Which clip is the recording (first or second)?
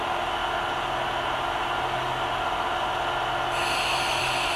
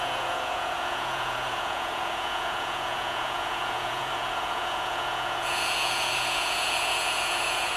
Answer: first